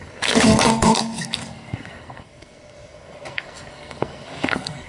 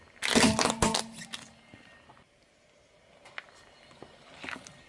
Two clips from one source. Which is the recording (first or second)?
second